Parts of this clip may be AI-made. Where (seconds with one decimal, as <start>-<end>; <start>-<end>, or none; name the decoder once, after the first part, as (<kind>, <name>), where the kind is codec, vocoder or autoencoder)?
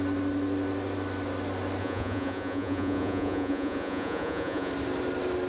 1.8-4.7 (vocoder, Vocos)